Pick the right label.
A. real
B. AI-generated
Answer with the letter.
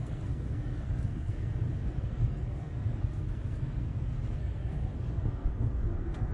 B